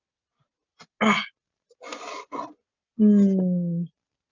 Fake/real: real